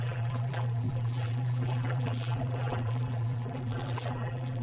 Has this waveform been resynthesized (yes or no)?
yes